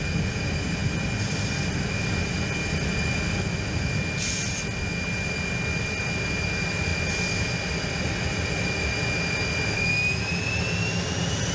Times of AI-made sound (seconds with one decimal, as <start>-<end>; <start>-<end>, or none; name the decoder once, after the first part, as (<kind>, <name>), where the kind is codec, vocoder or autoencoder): none